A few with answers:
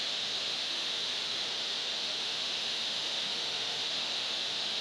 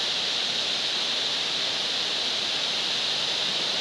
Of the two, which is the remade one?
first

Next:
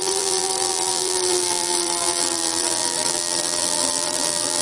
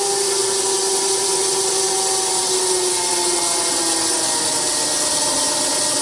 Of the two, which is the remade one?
first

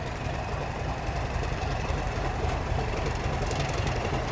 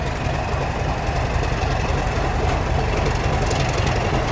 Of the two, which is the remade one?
first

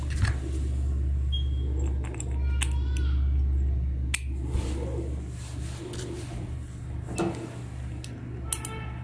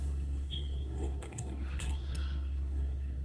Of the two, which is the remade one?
second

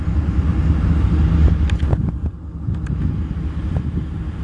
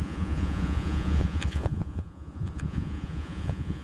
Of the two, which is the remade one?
second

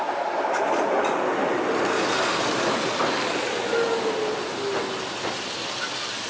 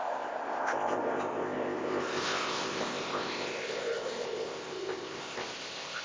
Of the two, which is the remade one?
second